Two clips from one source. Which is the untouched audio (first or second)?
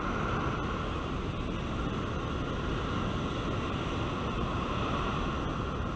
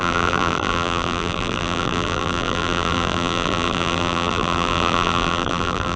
first